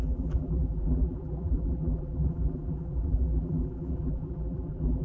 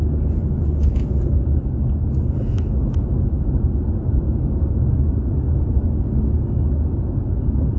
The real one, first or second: second